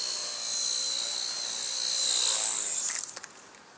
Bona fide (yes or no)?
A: yes